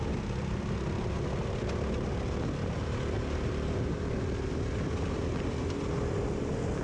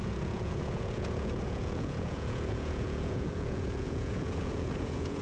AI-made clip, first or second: second